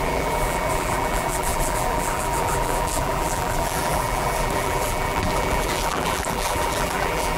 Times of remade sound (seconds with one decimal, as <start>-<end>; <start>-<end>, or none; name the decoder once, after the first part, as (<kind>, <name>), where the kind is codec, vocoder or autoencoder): 0.0-7.4 (vocoder, BigVGAN v2)